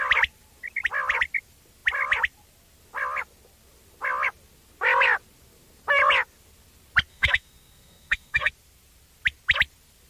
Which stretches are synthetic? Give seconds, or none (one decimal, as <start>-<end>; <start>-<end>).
7.1-8.5